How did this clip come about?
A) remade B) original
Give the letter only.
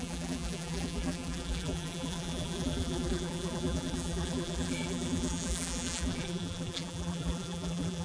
A